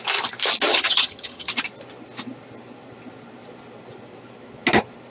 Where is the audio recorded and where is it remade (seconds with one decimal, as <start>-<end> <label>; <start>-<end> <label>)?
0.0-0.7 recorded; 0.7-1.5 remade; 1.5-5.1 recorded